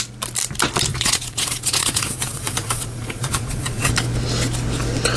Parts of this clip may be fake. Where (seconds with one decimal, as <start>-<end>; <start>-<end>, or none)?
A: 0.9-3.9

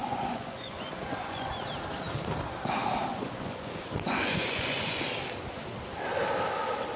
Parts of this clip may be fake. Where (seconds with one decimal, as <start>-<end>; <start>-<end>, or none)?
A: 0.0-1.5; 3.1-5.1